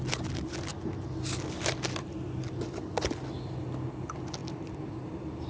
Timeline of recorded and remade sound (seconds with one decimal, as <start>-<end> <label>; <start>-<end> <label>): 0.0-5.5 recorded